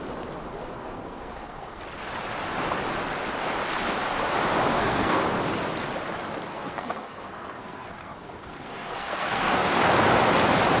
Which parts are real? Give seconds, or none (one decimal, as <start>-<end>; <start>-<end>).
0.0-0.5; 1.8-4.7; 5.2-6.5; 9.7-10.8